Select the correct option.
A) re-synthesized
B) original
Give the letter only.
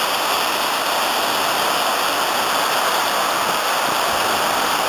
B